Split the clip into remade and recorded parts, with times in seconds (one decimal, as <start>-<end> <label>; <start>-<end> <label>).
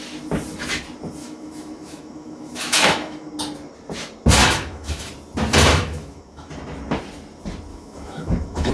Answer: 0.0-1.2 recorded; 1.2-3.3 remade; 3.3-4.4 recorded; 4.4-5.1 remade; 5.1-5.7 recorded; 5.7-6.5 remade; 6.5-7.7 recorded; 7.7-8.7 remade